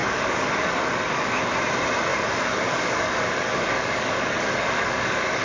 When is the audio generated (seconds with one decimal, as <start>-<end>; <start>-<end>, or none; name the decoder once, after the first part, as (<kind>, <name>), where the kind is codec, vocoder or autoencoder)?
0.0-1.3 (codec, DAC); 2.1-5.4